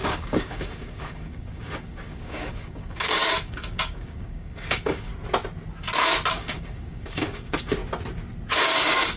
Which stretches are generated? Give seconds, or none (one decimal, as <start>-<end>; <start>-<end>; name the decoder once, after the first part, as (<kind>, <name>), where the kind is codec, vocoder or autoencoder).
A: 0.0-5.1 (codec, DAC); 6.3-7.8; 8.5-9.2

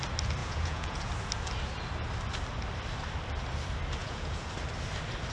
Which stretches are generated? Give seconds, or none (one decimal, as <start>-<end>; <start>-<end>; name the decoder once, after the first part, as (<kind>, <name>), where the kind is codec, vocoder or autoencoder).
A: 0.4-1.1 (vocoder, Vocos); 4.0-4.5